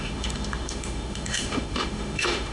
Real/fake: fake